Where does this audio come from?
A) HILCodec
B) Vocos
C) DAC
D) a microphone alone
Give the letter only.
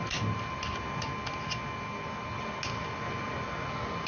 D